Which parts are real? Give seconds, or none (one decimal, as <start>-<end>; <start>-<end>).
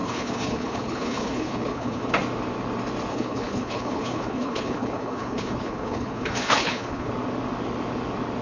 2.1-3.1; 7.1-8.4